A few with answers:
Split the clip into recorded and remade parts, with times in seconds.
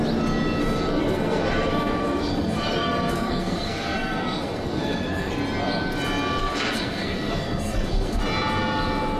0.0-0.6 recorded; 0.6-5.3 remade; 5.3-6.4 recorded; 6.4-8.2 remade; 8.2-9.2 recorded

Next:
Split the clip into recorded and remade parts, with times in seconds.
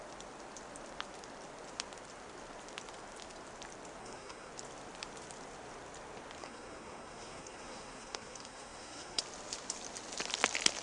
0.0-4.0 recorded; 4.0-4.5 remade; 4.5-6.4 recorded; 6.4-9.2 remade; 9.2-10.8 recorded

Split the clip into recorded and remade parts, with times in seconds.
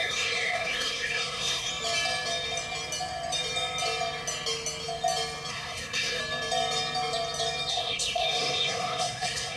0.0-1.7 remade; 1.7-5.5 recorded; 5.5-6.2 remade; 6.2-7.7 recorded; 7.7-9.6 remade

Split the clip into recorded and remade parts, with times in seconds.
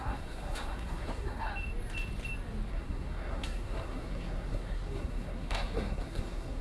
0.0-1.5 remade; 1.5-2.7 recorded; 2.7-6.6 remade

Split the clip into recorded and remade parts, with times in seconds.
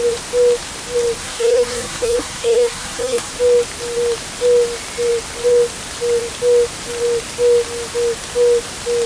0.0-1.2 recorded; 1.2-3.3 remade; 3.3-9.1 recorded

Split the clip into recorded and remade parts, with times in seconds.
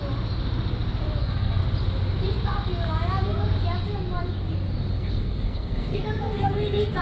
0.0-1.2 recorded; 1.2-1.6 remade; 1.6-4.9 recorded; 4.9-7.0 remade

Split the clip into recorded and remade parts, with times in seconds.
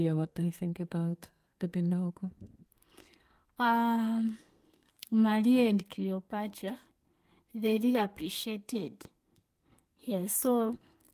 0.0-11.1 remade